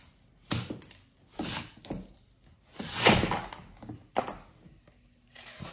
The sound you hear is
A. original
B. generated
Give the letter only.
A